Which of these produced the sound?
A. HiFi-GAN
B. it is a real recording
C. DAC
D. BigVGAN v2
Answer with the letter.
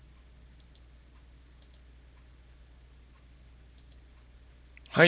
B